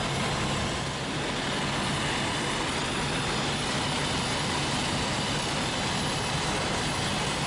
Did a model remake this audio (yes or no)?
no